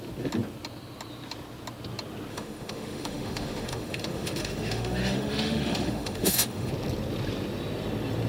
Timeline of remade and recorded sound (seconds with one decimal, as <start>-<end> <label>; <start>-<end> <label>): 0.0-2.3 recorded; 2.3-6.7 remade; 6.7-8.3 recorded